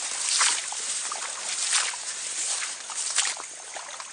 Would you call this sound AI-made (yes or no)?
no